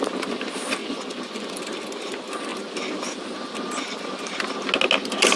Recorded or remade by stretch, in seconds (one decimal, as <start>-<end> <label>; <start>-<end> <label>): 0.0-0.8 recorded; 0.8-1.5 remade; 1.5-5.4 recorded